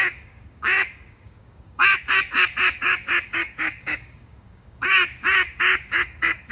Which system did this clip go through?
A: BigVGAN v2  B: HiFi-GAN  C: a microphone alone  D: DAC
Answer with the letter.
D